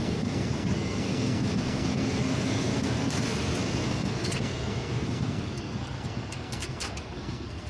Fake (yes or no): yes